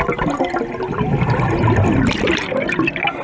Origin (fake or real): real